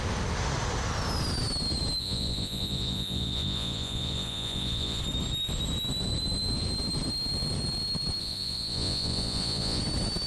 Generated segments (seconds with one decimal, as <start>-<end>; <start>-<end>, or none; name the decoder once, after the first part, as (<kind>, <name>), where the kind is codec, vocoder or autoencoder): 2.0-5.0 (vocoder, Vocos); 8.2-9.8